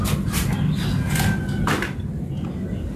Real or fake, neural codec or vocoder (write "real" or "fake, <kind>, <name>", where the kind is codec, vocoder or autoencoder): real